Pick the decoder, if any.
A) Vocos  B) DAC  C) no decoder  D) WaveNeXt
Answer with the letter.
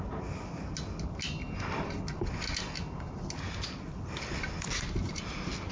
C